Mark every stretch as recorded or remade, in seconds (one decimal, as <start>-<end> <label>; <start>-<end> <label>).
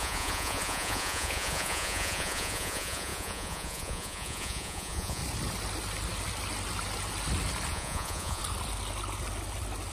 0.0-5.2 remade; 5.2-7.7 recorded; 7.7-8.4 remade; 8.4-9.9 recorded